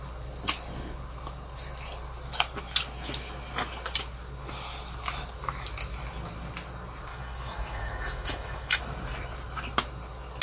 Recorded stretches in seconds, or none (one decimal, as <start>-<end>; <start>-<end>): 0.0-7.1; 8.8-10.4